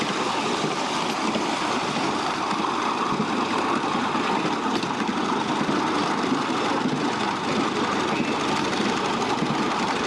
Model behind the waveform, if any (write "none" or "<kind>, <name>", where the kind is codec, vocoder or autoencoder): none